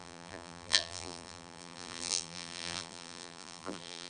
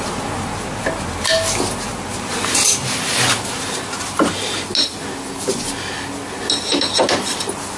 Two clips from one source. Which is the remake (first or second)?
first